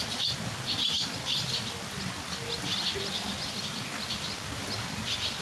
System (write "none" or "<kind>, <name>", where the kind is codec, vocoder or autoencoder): none